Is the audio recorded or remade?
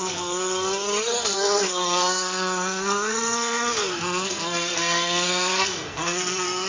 remade